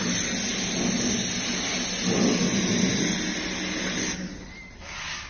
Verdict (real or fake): real